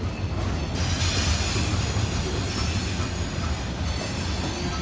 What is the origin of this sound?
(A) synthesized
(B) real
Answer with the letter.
B